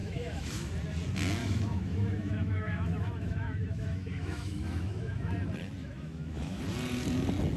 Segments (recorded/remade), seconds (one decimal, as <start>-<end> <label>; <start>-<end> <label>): 0.0-0.7 remade; 0.7-1.4 recorded; 1.4-5.3 remade; 5.3-5.8 recorded; 5.8-6.6 remade; 6.6-7.6 recorded